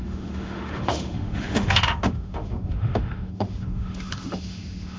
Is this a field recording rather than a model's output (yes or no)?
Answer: no